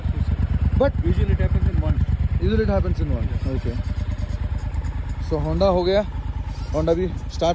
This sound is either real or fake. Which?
real